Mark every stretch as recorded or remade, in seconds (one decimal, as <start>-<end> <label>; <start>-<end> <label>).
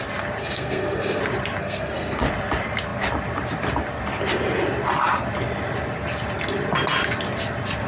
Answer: 0.0-0.4 recorded; 0.4-1.2 remade; 1.2-1.6 recorded; 1.6-2.2 remade; 2.2-7.9 recorded